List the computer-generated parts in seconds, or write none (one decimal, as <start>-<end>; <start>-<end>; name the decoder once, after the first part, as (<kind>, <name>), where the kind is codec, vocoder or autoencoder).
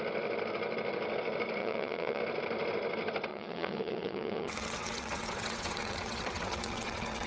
1.6-2.2 (vocoder, WaveNeXt); 3.3-7.3